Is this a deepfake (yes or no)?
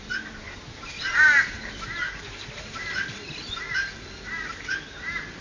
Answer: no